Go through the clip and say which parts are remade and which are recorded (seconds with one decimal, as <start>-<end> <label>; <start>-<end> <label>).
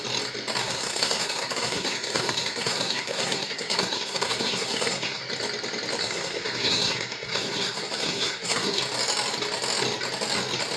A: 0.0-0.6 recorded; 0.6-5.2 remade; 5.2-6.0 recorded; 6.0-8.8 remade; 8.8-10.8 recorded